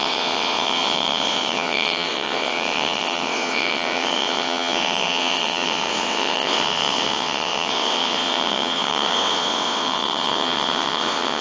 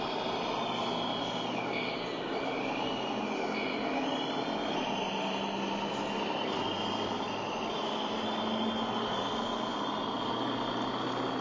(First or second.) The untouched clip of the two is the second